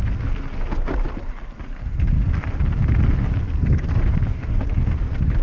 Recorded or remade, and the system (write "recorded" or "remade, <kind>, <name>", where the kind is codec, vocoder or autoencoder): recorded